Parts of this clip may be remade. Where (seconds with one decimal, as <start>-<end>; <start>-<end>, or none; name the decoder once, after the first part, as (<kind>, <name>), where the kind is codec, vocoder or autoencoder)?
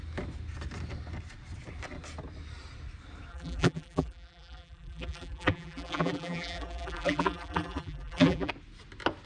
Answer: 3.3-8.5 (vocoder, BigVGAN v2)